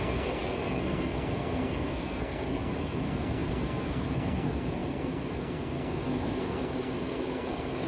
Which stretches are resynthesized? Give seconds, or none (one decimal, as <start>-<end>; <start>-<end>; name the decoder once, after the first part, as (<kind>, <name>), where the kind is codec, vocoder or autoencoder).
0.0-7.9 (codec, SNAC)